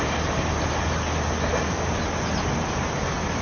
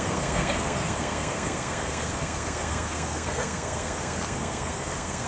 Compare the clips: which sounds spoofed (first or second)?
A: second